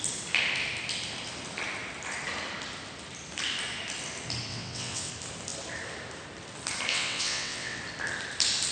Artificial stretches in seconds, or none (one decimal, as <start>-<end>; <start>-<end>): 4.5-5.1; 6.9-7.8